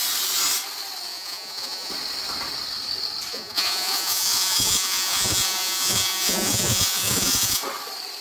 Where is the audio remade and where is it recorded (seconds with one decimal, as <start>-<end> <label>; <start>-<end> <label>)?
0.0-1.1 recorded; 1.1-1.9 remade; 1.9-3.3 recorded; 3.3-7.6 remade; 7.6-8.2 recorded